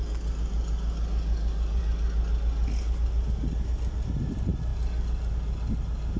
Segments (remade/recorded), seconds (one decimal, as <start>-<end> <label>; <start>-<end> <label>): 0.0-6.2 recorded